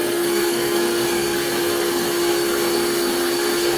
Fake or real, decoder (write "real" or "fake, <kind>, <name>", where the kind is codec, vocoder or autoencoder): fake, codec, SNAC